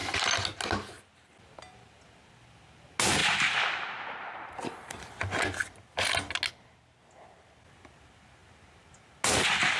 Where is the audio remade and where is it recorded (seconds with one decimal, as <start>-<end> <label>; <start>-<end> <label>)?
0.0-9.8 recorded